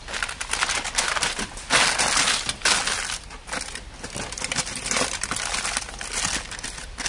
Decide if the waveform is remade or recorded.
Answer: recorded